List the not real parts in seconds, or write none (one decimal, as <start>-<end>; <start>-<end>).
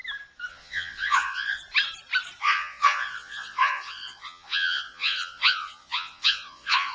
0.5-1.6; 2.4-6.9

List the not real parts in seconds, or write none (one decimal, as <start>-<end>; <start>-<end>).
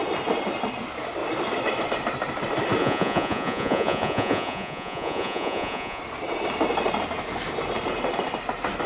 2.8-6.0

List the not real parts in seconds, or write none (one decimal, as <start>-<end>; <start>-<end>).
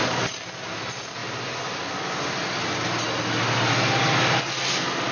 none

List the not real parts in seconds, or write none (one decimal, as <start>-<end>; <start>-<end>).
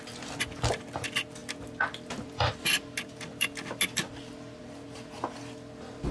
none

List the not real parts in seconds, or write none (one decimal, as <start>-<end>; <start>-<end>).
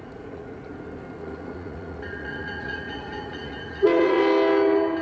0.0-0.7; 1.2-4.2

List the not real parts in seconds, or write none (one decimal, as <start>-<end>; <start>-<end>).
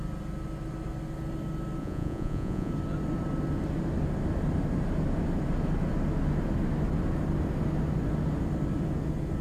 1.8-2.7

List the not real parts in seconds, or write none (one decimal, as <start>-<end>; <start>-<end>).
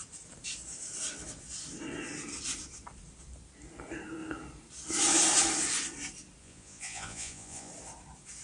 6.4-7.7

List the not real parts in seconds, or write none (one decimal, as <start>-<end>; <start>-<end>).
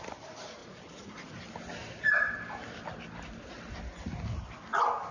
0.6-1.4